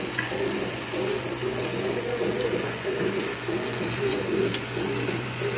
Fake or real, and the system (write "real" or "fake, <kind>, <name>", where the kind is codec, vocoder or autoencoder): fake, vocoder, Vocos